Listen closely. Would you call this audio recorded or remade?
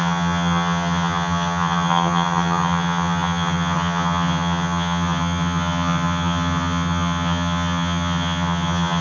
remade